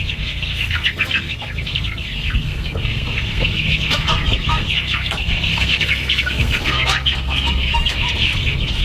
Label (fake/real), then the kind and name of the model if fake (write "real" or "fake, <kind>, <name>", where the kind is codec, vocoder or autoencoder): fake, codec, SNAC